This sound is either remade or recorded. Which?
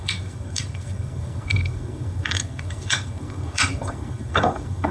remade